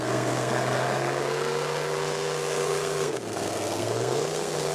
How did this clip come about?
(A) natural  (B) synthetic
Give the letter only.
B